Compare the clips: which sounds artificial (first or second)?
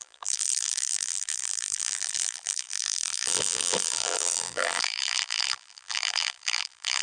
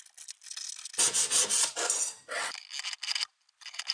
first